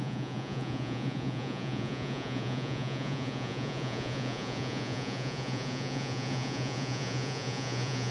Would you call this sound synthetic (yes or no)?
yes